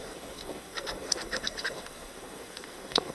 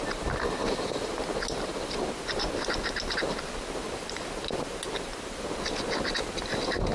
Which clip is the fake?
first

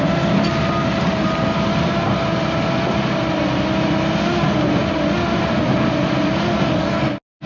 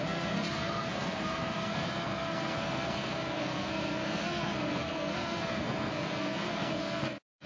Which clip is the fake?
second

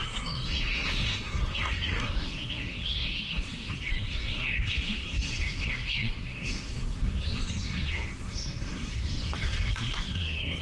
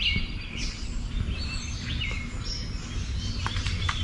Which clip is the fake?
first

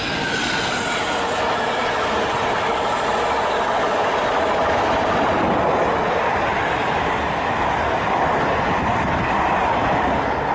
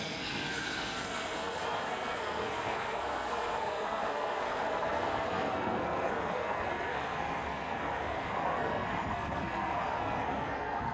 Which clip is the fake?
second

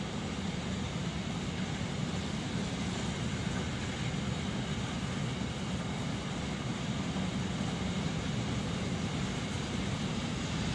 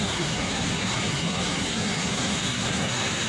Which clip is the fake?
second